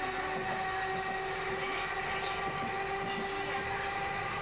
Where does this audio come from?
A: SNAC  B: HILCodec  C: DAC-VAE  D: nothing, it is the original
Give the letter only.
D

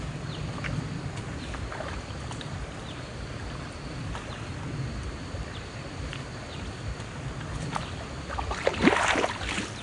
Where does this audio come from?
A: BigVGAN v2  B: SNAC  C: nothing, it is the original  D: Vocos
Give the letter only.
C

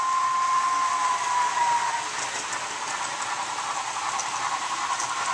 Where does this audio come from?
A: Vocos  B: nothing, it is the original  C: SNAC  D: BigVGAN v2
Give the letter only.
B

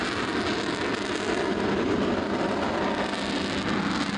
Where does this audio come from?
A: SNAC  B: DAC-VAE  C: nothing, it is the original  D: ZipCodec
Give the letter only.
C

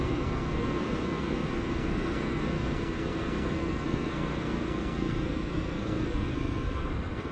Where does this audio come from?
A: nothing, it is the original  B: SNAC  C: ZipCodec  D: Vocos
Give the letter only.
B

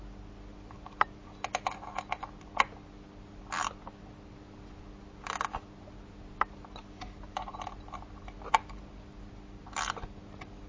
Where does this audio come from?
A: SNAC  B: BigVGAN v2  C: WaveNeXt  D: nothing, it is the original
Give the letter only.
D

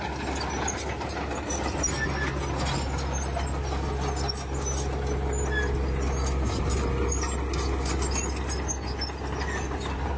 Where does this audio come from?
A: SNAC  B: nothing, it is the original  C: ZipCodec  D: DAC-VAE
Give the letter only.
B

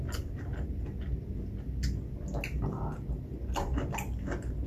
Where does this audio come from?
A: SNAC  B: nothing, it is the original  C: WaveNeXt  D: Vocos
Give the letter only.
B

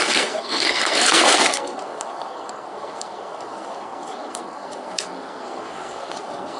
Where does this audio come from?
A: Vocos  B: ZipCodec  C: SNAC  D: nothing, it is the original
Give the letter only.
C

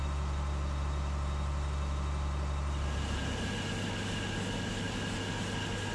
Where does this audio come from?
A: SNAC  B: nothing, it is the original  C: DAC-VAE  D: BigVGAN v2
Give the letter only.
B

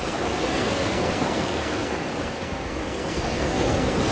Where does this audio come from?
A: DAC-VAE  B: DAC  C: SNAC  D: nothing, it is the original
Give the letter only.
C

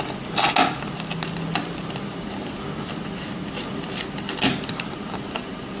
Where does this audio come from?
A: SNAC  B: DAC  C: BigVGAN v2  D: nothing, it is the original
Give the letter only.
D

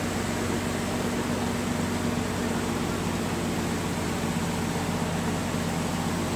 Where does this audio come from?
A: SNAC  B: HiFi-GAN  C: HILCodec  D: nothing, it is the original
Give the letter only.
D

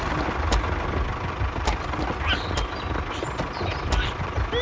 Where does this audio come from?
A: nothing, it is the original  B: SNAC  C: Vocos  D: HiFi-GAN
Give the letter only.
A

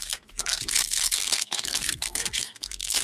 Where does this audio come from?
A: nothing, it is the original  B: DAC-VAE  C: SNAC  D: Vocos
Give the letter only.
C